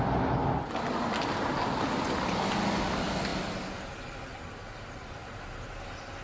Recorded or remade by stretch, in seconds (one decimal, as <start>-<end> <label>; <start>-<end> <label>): 0.0-6.2 recorded